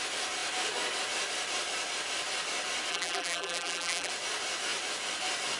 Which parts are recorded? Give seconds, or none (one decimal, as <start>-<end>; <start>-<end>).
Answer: 0.0-2.9; 4.1-5.6